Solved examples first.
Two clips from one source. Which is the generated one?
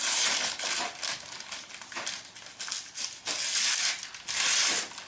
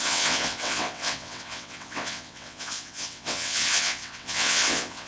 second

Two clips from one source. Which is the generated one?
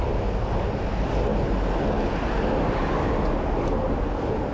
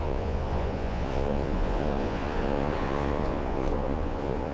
second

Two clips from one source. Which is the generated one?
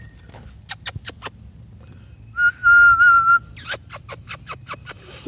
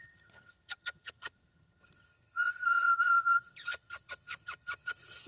second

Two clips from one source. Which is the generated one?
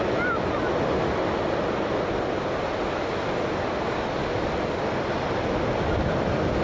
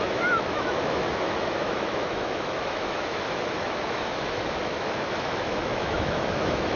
second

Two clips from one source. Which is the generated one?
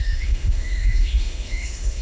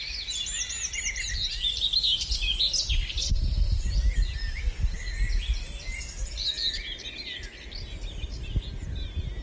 first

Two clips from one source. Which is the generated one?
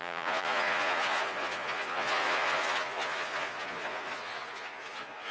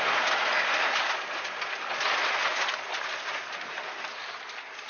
first